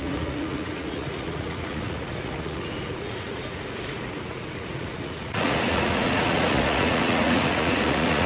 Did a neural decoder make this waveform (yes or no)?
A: yes